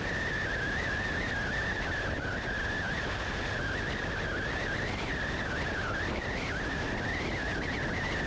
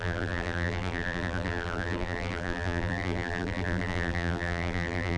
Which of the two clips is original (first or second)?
first